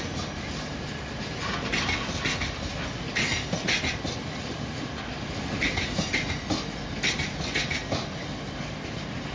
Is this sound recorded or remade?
recorded